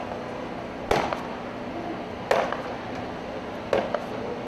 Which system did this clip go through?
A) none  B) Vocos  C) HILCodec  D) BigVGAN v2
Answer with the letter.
A